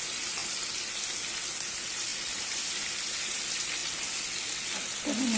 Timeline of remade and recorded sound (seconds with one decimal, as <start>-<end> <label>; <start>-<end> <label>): 0.0-2.1 recorded; 2.1-3.4 remade; 3.4-5.4 recorded